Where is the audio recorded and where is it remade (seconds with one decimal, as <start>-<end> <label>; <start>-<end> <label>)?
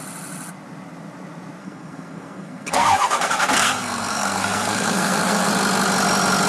0.0-1.6 recorded; 1.6-5.5 remade; 5.5-6.5 recorded